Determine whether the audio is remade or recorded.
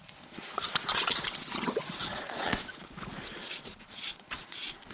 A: remade